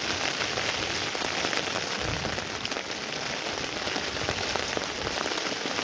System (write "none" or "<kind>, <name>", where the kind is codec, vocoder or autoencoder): none